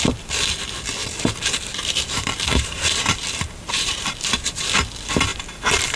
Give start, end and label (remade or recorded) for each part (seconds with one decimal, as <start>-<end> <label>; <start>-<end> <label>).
0.0-1.0 recorded; 1.0-4.6 remade; 4.6-5.3 recorded; 5.3-6.0 remade